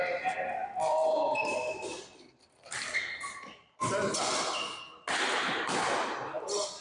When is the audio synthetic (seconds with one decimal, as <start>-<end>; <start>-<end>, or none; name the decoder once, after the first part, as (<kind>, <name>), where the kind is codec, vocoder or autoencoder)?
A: none

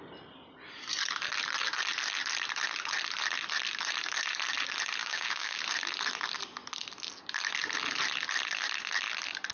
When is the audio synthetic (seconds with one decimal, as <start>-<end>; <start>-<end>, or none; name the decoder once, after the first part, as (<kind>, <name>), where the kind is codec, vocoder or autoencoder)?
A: 5.0-5.6 (codec, DAC)

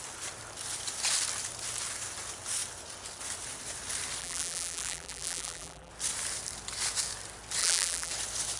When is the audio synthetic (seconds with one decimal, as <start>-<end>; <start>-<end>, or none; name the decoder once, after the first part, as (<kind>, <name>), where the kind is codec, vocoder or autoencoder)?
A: 4.2-5.9 (vocoder, BigVGAN v2); 7.6-8.1

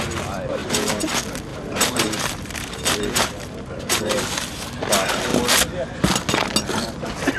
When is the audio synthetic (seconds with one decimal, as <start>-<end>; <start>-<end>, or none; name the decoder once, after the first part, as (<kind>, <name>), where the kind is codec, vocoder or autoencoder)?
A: 0.6-1.1 (vocoder, BigVGAN v2); 1.5-4.8

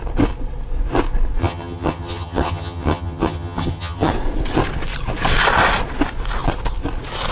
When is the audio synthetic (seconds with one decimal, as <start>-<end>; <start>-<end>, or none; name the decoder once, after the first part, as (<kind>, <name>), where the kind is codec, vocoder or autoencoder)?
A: 1.4-4.1 (vocoder, HiFi-GAN)

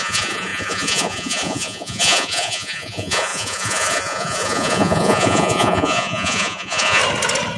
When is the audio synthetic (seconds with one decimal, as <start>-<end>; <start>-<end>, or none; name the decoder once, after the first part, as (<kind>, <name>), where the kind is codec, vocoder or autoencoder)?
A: 0.0-7.0 (vocoder, Vocos)